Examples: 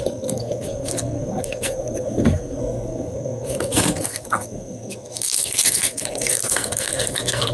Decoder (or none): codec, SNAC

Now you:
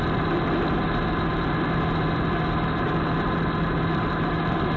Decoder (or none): none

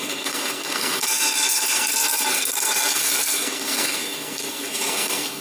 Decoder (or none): codec, SNAC